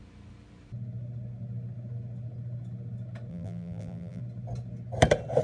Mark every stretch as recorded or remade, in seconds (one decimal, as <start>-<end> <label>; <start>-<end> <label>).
0.0-3.3 recorded; 3.3-4.2 remade; 4.2-5.4 recorded